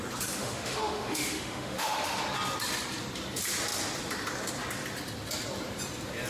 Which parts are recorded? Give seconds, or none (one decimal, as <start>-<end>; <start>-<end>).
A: 0.0-0.4; 2.2-6.3